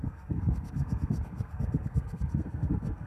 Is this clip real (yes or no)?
no